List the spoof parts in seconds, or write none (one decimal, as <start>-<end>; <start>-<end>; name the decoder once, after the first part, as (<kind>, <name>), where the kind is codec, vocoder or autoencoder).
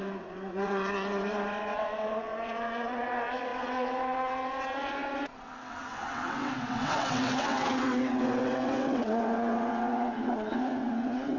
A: 0.0-11.4 (vocoder, WaveNeXt)